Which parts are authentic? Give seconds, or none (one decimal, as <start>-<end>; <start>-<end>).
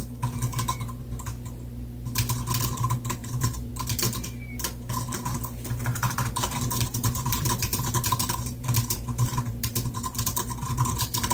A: 0.0-0.5; 1.0-3.2; 3.7-5.9